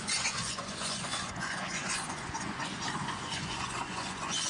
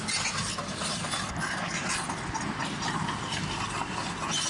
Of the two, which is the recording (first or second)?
second